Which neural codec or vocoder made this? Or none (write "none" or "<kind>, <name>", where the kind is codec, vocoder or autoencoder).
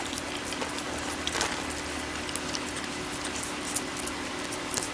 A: none